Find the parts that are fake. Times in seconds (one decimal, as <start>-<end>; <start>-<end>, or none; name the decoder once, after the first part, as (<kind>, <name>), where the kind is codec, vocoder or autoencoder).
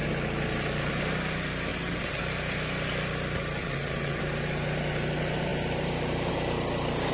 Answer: 1.7-2.2 (vocoder, WaveNeXt); 3.6-4.2